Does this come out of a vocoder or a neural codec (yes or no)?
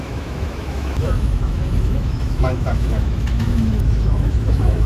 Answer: yes